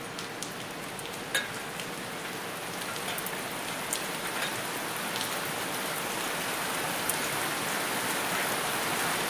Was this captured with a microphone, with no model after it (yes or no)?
yes